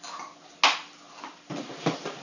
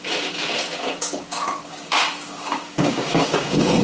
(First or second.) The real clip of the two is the first